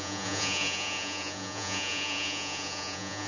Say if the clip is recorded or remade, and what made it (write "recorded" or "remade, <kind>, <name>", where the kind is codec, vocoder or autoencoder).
remade, vocoder, Vocos